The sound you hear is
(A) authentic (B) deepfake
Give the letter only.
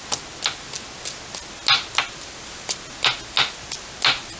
A